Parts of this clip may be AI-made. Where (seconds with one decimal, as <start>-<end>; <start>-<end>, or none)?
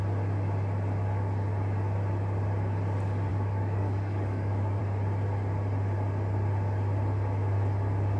3.3-4.8